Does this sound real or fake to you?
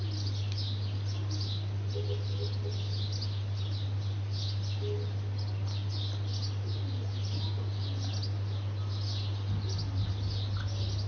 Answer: real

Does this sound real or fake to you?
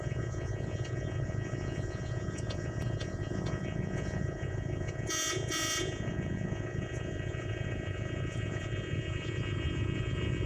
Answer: fake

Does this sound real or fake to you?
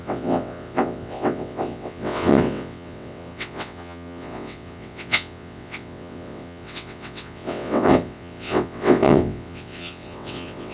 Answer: fake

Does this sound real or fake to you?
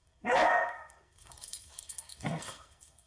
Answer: fake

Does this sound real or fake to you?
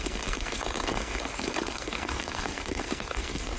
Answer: fake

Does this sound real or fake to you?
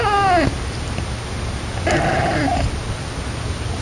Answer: real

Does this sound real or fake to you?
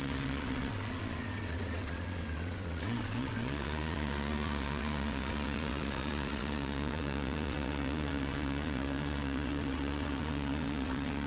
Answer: fake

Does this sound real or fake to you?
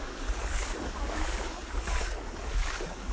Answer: fake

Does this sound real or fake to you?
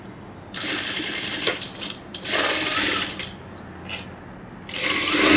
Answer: real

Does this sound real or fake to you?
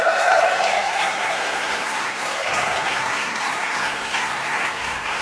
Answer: fake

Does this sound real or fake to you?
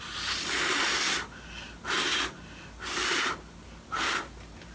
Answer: real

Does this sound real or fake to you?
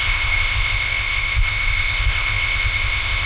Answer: fake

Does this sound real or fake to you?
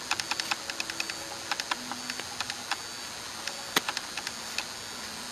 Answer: real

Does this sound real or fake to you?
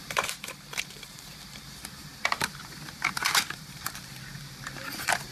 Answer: fake